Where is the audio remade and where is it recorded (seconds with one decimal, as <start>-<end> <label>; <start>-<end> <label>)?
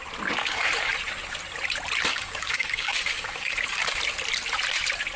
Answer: 0.0-0.4 recorded; 0.4-0.9 remade; 0.9-2.1 recorded; 2.1-3.8 remade; 3.8-5.2 recorded